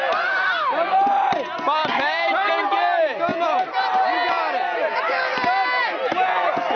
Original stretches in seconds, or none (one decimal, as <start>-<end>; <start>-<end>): 0.0-1.8; 2.5-3.3; 4.4-6.8